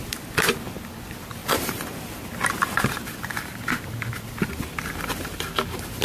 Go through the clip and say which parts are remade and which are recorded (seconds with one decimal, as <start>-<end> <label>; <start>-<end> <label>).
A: 0.0-1.4 recorded; 1.4-2.2 remade; 2.2-6.0 recorded